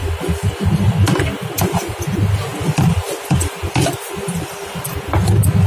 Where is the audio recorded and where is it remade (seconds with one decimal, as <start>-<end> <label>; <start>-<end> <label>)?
0.0-5.7 recorded